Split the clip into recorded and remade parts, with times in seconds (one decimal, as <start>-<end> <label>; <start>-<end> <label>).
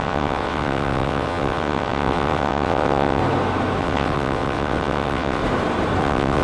0.0-3.2 remade; 3.2-3.8 recorded; 3.8-5.4 remade; 5.4-6.0 recorded; 6.0-6.4 remade